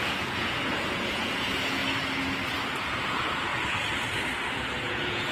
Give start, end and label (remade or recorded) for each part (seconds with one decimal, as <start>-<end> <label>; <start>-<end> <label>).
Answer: 0.0-1.8 remade; 1.8-2.5 recorded; 2.5-3.5 remade; 3.5-4.8 recorded; 4.8-5.3 remade